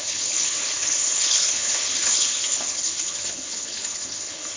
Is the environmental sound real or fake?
fake